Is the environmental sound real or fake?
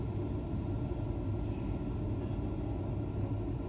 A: real